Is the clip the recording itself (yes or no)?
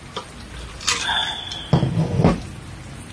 yes